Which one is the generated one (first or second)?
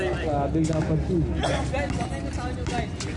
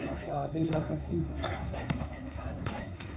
second